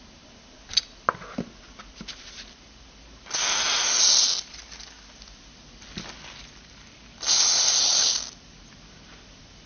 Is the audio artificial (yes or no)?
no